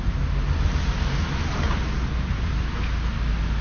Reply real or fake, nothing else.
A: real